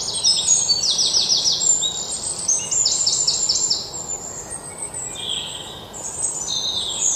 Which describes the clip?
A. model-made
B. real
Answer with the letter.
B